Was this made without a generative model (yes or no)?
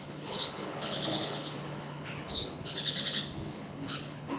no